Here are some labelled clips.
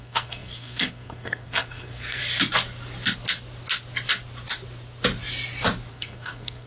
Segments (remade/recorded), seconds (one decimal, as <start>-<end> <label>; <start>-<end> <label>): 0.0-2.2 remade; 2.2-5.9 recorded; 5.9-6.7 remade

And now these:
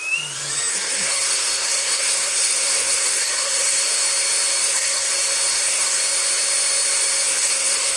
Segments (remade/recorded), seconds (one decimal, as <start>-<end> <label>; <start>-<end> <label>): 0.0-0.7 recorded; 0.7-3.8 remade; 3.8-4.6 recorded; 4.6-5.1 remade; 5.1-5.5 recorded; 5.5-6.0 remade; 6.0-7.3 recorded; 7.3-8.0 remade

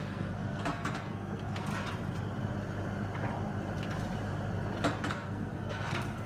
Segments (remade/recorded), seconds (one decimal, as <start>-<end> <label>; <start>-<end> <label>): 0.0-1.7 remade; 1.7-5.1 recorded; 5.1-6.3 remade